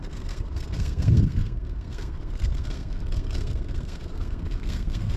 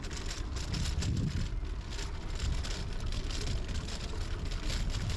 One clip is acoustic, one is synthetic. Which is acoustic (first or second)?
second